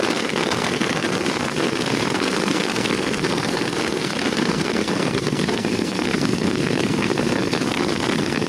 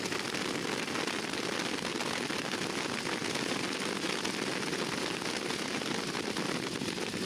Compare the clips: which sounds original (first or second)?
second